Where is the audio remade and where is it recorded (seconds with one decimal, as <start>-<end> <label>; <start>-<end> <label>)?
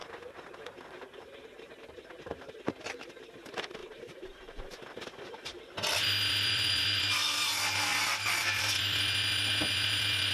0.0-3.8 recorded; 3.8-7.5 remade; 7.5-7.9 recorded; 7.9-9.0 remade; 9.0-10.3 recorded